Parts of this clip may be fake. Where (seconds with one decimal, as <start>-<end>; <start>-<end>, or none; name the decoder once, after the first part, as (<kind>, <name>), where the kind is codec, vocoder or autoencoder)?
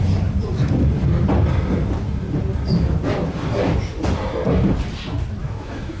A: 5.4-6.0 (autoencoder, DAC-VAE)